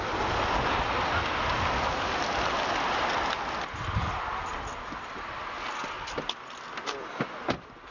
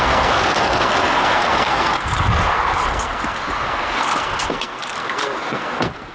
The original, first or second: first